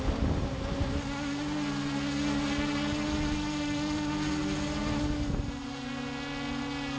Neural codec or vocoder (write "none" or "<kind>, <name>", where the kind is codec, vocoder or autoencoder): none